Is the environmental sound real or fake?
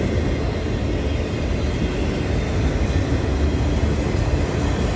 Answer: real